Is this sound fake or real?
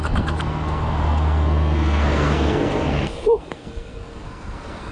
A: fake